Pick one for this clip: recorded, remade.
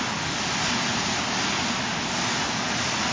recorded